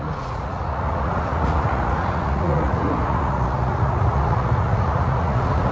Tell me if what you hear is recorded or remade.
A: remade